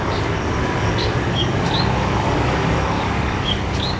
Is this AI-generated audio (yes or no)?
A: yes